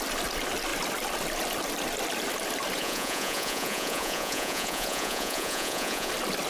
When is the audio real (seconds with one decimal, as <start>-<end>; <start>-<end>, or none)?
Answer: 0.0-2.8; 6.1-6.5